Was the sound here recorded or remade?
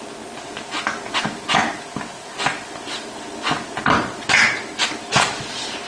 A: recorded